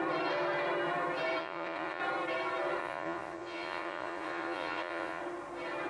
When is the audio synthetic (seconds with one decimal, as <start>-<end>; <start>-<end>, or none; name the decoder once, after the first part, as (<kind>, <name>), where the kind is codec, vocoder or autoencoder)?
1.4-2.0 (vocoder, Vocos); 2.8-5.2